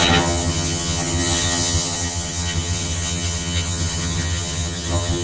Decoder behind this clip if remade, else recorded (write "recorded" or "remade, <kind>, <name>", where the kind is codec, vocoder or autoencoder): remade, vocoder, HiFi-GAN